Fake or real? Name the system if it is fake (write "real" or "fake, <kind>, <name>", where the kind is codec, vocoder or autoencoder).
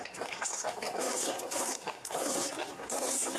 fake, codec, SNAC